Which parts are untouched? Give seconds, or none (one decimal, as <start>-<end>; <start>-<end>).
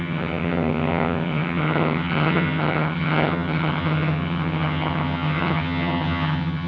none